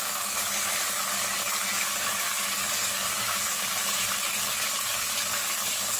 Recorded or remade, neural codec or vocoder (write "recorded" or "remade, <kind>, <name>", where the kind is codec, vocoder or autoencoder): remade, codec, DAC